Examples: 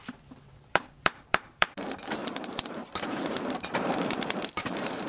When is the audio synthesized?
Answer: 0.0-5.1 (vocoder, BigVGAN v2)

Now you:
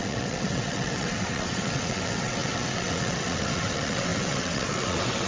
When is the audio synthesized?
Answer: 0.0-5.3 (vocoder, WaveNeXt)

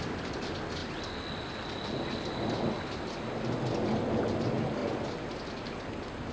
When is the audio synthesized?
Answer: none